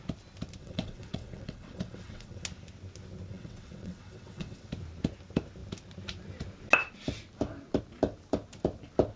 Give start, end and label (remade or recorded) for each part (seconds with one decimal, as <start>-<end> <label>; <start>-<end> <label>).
0.0-0.6 recorded; 0.6-2.4 remade; 2.4-3.3 recorded; 3.3-4.7 remade; 4.7-9.2 recorded